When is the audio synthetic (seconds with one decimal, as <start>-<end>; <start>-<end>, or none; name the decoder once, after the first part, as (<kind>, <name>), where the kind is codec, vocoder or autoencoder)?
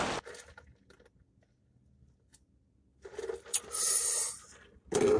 2.9-4.0 (vocoder, BigVGAN v2)